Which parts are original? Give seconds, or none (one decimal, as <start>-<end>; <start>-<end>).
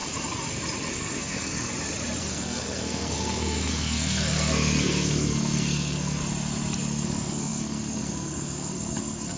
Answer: 0.0-0.9; 1.7-2.2; 6.2-6.8